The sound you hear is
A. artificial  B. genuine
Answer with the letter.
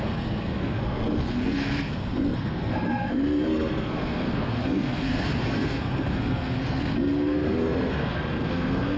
A